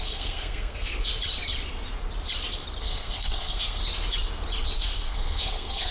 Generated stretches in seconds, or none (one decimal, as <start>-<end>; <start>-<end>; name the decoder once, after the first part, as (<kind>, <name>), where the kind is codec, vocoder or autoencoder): 0.0-1.1 (codec, SNAC); 2.8-3.8; 4.8-5.9